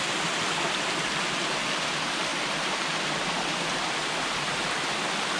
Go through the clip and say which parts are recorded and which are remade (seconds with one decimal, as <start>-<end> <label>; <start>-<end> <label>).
0.0-2.3 recorded; 2.3-3.8 remade; 3.8-5.4 recorded

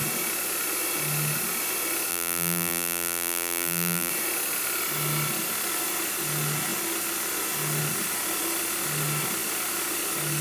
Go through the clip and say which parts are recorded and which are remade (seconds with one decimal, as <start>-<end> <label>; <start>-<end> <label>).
0.0-2.1 recorded; 2.1-4.1 remade; 4.1-10.4 recorded

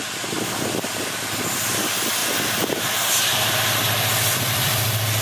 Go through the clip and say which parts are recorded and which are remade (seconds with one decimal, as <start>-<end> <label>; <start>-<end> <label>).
0.0-5.2 remade

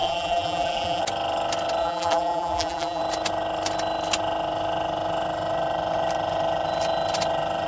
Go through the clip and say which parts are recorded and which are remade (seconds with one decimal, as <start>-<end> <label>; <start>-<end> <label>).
0.0-1.0 remade; 1.0-1.8 recorded; 1.8-3.0 remade; 3.0-7.7 recorded

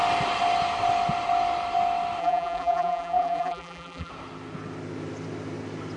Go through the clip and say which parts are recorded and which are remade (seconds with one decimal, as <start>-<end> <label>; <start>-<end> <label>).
0.0-2.2 recorded; 2.2-4.1 remade; 4.1-6.0 recorded

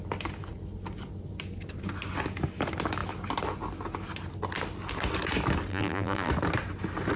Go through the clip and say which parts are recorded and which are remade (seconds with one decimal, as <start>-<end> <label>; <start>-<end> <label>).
0.0-5.7 recorded; 5.7-6.3 remade; 6.3-7.2 recorded

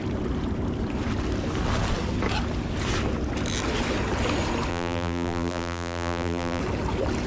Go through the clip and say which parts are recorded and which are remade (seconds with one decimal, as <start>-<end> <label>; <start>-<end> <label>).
0.0-4.7 recorded; 4.7-6.6 remade; 6.6-7.3 recorded